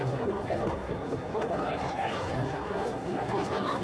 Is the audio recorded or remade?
remade